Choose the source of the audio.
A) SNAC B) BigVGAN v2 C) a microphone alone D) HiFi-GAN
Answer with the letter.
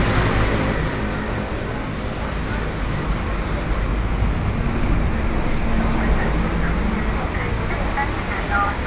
C